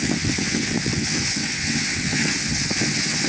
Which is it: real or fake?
fake